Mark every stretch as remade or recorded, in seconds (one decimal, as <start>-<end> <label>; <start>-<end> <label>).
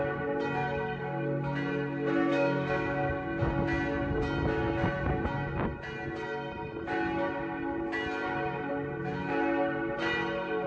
0.0-2.3 recorded; 2.3-3.1 remade; 3.1-10.7 recorded